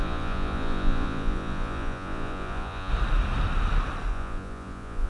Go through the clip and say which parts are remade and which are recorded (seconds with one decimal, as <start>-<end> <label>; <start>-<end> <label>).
0.0-2.9 remade; 2.9-4.1 recorded; 4.1-5.1 remade